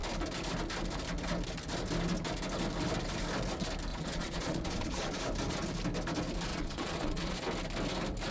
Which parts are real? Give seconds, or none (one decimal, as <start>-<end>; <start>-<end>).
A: 0.0-3.9; 5.2-6.5; 7.4-8.3